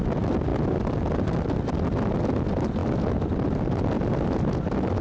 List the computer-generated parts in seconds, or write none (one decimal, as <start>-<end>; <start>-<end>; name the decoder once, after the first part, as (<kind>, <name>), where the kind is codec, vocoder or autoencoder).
none